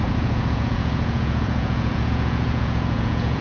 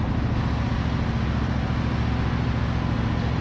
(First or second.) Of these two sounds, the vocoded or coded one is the first